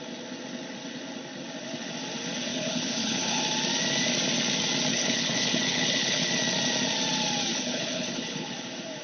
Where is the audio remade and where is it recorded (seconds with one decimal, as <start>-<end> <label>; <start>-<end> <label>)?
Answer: 0.0-2.5 recorded; 2.5-3.4 remade; 3.4-4.9 recorded; 4.9-6.3 remade; 6.3-7.5 recorded; 7.5-8.5 remade; 8.5-9.0 recorded